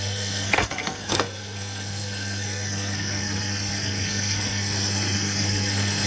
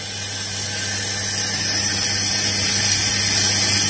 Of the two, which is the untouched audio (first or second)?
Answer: second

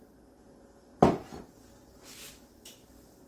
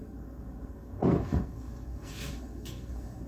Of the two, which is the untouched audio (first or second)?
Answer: first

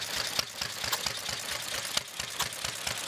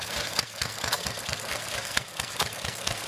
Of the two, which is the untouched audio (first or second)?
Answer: first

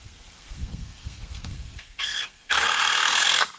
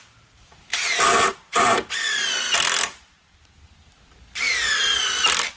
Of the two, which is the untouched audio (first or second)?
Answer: second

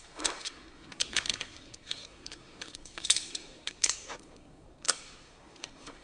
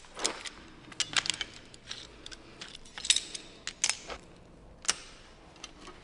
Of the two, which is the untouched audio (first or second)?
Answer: second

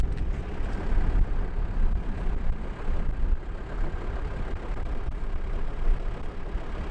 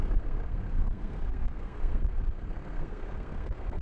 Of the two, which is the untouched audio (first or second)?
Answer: first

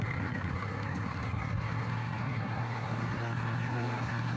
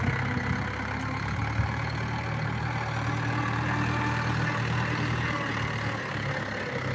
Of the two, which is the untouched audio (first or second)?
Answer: second